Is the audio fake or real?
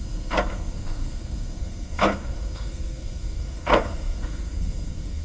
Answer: fake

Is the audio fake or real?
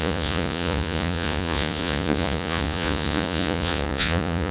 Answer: fake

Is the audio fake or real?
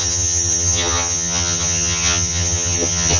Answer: fake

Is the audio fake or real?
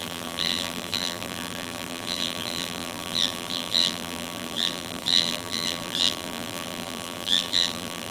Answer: fake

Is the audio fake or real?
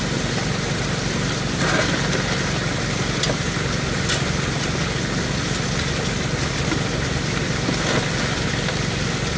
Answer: real